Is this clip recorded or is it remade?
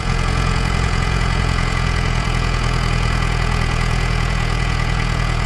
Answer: remade